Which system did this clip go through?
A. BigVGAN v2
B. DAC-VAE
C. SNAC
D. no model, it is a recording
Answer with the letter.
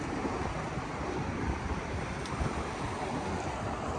D